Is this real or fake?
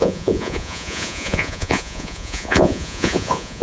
fake